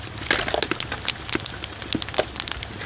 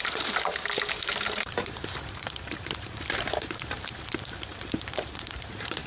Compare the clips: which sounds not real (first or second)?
second